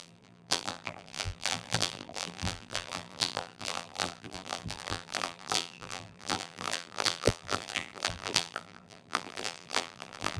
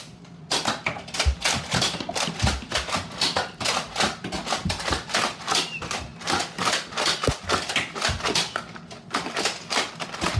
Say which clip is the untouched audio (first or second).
second